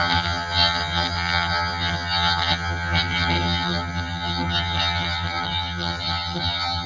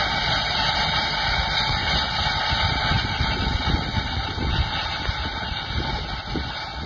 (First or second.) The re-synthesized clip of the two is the first